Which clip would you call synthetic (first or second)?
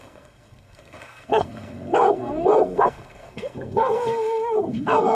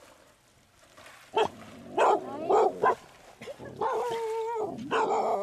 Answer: first